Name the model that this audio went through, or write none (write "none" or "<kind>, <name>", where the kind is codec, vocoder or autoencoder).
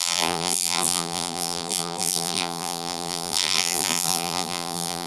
vocoder, BigVGAN v2